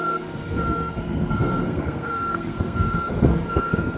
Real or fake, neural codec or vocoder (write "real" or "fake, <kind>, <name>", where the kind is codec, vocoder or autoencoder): fake, codec, SNAC